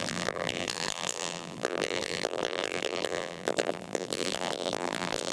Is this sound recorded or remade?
remade